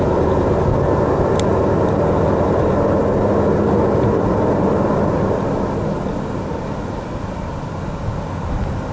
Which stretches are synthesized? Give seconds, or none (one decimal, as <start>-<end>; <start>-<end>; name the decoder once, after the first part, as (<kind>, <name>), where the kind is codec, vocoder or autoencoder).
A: none